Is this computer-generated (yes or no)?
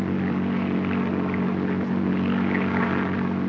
no